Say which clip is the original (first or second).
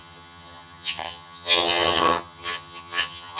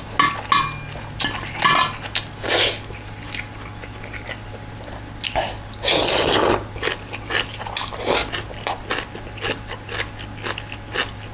second